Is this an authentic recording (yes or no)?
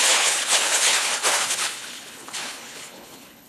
no